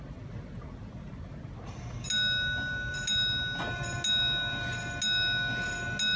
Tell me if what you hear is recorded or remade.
recorded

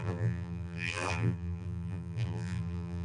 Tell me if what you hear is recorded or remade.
remade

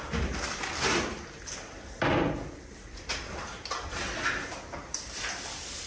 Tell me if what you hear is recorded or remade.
recorded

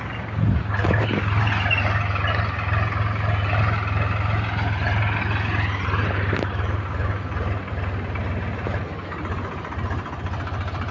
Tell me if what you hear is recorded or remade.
recorded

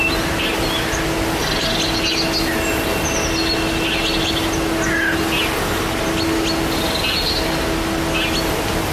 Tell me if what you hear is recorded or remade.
recorded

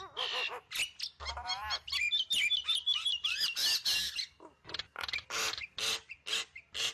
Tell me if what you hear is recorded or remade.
recorded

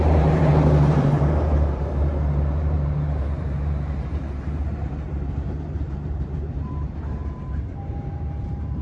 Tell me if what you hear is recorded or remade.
remade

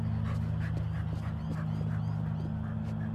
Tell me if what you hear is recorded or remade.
recorded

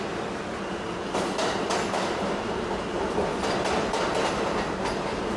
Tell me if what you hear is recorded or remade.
recorded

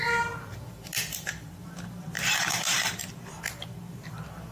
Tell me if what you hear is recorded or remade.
remade